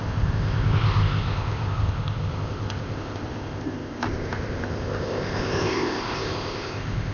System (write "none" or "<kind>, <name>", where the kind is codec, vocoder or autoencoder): codec, ZipCodec